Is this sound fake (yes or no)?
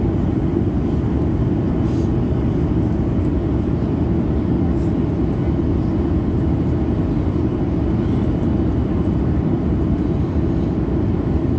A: no